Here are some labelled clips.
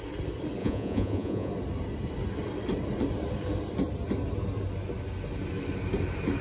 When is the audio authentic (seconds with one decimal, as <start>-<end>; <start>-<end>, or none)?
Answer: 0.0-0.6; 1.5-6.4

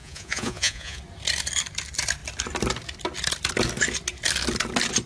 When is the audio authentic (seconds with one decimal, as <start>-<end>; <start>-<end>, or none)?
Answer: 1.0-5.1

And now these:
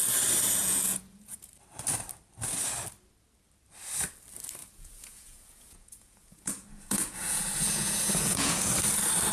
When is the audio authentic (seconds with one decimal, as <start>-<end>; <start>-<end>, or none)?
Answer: 0.0-0.6; 1.5-4.6; 8.7-9.3